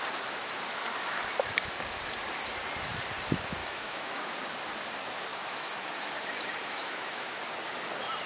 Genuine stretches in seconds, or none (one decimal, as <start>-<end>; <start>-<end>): 0.0-3.6; 4.3-5.3; 6.1-6.6; 7.4-8.3